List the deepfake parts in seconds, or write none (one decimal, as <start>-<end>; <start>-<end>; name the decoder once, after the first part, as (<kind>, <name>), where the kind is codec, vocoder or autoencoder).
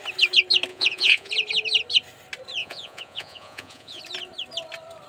0.7-1.3 (vocoder, Vocos); 2.6-4.0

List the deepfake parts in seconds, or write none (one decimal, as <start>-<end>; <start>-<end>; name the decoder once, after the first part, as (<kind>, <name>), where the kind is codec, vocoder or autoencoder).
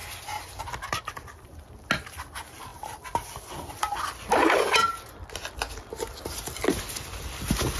none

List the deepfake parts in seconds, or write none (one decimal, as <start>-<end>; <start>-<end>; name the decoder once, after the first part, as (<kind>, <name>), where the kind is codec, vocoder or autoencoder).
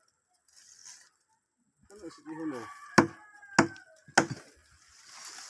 none